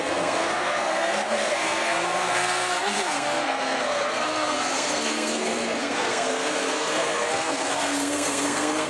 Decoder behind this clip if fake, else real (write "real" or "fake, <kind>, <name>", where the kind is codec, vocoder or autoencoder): fake, codec, SNAC